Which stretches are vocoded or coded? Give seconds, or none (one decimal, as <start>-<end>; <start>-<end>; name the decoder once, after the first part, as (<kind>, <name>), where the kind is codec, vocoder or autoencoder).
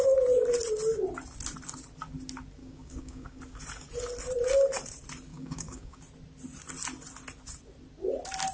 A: 2.6-3.4 (codec, DAC); 5.3-6.0